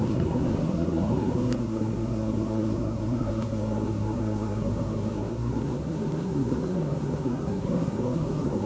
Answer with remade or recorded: remade